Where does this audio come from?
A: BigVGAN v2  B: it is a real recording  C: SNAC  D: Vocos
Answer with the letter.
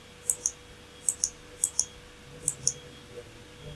B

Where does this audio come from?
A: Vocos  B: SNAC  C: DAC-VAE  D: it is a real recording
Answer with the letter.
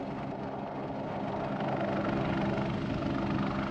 D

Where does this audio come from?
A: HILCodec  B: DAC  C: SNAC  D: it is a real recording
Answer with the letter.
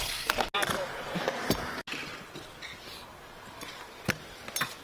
D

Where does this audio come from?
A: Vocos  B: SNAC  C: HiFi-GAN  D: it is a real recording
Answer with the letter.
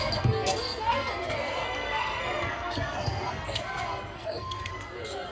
B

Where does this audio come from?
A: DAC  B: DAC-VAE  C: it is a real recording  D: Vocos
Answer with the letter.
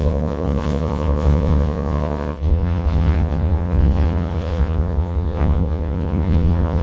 D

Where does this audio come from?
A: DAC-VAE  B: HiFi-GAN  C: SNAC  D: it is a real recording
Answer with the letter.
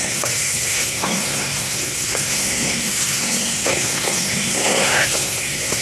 C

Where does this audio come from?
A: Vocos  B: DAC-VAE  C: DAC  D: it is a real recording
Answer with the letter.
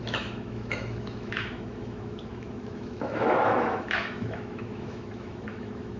B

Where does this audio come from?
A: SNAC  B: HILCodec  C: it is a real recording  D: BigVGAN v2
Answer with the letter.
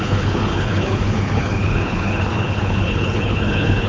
B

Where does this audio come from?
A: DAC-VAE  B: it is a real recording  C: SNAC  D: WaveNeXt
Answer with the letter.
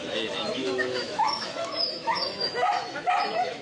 A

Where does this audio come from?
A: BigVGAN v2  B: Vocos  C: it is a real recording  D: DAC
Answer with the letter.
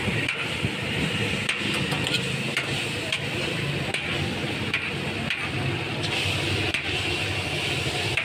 C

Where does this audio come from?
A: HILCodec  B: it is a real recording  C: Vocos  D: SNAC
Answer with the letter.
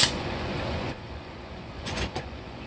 C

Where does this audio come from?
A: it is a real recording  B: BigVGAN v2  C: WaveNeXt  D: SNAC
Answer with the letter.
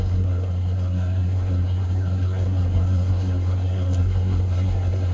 D